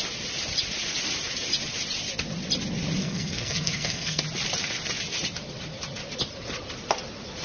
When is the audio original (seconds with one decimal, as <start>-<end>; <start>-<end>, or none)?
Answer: 0.0-3.0; 4.2-7.4